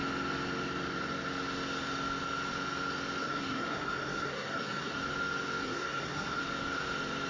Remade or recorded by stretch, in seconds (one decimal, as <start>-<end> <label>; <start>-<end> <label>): 0.0-3.2 recorded; 3.2-5.0 remade; 5.0-5.6 recorded; 5.6-6.4 remade; 6.4-7.3 recorded